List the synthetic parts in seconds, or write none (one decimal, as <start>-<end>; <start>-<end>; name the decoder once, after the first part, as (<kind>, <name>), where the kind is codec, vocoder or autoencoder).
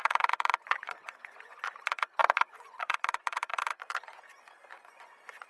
0.0-5.5 (vocoder, Vocos)